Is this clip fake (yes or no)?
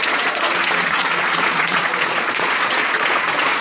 yes